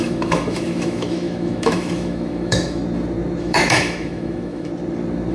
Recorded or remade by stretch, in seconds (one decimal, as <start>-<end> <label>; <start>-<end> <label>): 0.0-2.8 remade; 2.8-3.4 recorded; 3.4-4.7 remade; 4.7-5.3 recorded